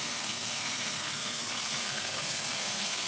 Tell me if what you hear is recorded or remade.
remade